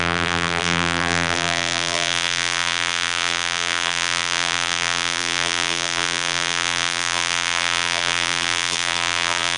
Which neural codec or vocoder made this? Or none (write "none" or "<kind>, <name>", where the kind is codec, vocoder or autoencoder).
vocoder, BigVGAN v2